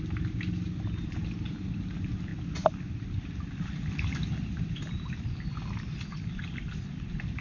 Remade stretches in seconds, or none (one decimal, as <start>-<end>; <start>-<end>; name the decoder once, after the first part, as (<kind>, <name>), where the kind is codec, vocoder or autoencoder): none